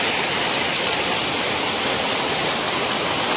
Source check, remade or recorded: recorded